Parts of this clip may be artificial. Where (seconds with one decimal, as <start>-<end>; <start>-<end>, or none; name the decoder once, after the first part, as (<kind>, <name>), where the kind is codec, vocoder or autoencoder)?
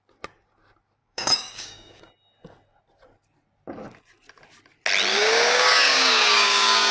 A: 1.0-2.0 (codec, DAC); 5.1-6.9